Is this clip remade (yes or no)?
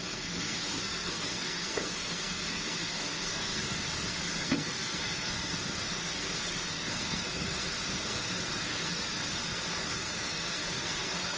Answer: yes